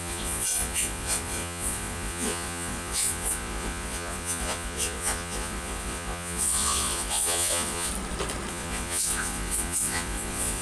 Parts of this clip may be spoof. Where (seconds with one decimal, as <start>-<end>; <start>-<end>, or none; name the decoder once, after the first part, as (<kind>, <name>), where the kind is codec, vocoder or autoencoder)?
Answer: 0.0-7.9 (vocoder, Vocos); 8.5-10.6